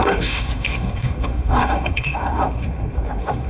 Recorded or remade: remade